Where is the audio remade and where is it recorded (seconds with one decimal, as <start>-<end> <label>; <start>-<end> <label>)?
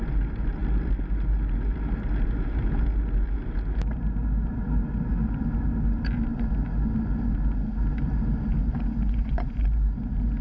0.0-8.6 recorded; 8.6-9.5 remade; 9.5-10.4 recorded